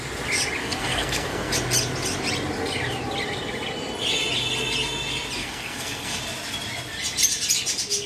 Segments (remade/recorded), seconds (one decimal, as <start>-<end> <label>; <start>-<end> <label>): 0.0-0.6 recorded; 0.6-1.5 remade; 1.5-5.4 recorded; 5.4-6.2 remade; 6.2-8.1 recorded